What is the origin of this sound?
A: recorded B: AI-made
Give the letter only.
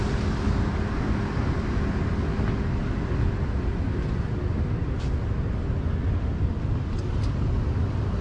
A